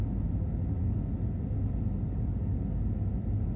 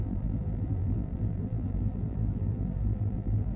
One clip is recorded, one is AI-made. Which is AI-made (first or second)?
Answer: second